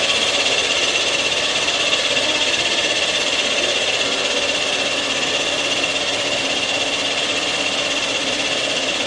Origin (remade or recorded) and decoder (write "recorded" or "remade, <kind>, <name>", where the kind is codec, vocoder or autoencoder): remade, vocoder, BigVGAN v2